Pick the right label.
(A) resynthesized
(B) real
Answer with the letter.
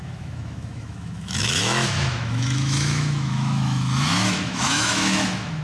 A